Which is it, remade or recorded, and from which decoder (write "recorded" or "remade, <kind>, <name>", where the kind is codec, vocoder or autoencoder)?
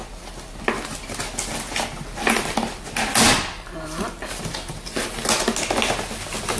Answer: recorded